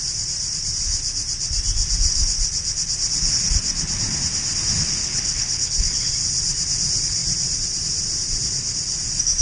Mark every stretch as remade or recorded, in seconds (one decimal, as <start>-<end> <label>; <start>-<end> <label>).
0.0-5.0 recorded; 5.0-6.1 remade; 6.1-9.4 recorded